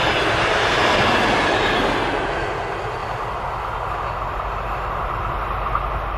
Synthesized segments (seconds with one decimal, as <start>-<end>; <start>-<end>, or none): none